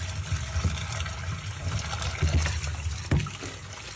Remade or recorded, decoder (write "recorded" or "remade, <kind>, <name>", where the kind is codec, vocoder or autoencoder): recorded